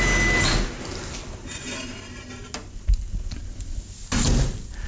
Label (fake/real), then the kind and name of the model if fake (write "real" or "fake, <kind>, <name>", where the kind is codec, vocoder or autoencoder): real